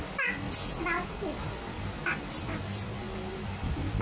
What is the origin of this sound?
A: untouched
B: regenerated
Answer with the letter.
A